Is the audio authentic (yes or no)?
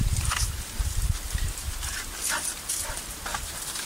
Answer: no